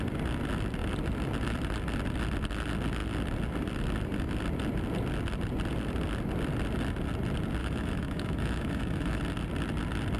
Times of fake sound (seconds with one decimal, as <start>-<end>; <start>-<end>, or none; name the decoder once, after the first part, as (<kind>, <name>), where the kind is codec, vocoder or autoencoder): 7.6-9.2 (autoencoder, DAC-VAE)